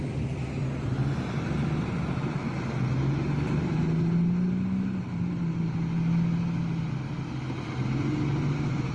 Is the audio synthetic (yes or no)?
no